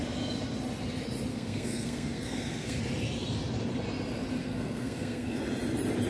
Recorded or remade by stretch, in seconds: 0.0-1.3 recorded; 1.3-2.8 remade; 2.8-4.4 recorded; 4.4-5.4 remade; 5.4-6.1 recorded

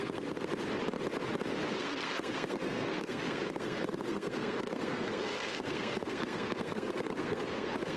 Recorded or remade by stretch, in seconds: 0.0-0.5 remade; 0.5-1.7 recorded; 1.7-8.0 remade

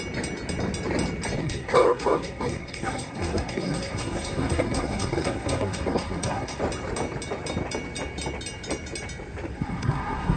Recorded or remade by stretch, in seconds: 0.0-1.4 recorded; 1.4-6.6 remade; 6.6-9.5 recorded; 9.5-10.4 remade